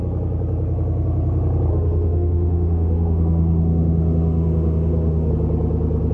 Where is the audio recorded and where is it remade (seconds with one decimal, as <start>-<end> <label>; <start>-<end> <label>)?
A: 0.0-1.7 recorded; 1.7-5.3 remade; 5.3-6.1 recorded